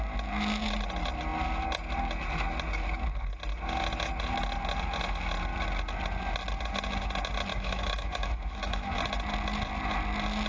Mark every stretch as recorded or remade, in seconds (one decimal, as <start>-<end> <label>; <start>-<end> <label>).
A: 0.0-7.5 recorded; 7.5-9.0 remade; 9.0-10.5 recorded